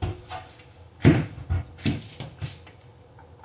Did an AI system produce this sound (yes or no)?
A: no